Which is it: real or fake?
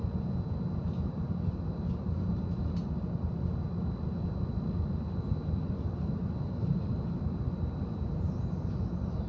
real